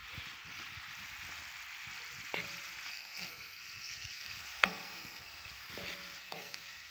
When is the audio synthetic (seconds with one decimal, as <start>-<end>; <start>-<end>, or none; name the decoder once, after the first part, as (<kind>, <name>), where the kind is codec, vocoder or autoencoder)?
2.9-5.6 (codec, SNAC); 6.2-6.9